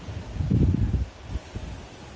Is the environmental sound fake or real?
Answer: real